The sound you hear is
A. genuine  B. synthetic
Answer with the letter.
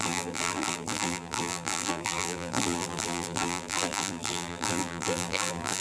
B